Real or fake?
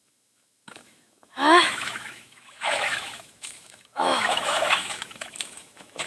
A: fake